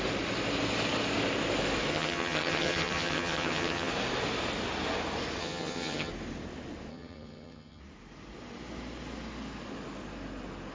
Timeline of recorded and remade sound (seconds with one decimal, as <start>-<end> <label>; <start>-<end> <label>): 0.0-1.9 recorded; 1.9-3.9 remade; 3.9-5.4 recorded; 5.4-6.1 remade; 6.1-6.9 recorded; 6.9-7.8 remade; 7.8-10.7 recorded